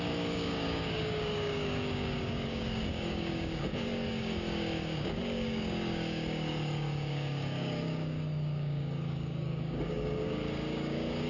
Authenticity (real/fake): fake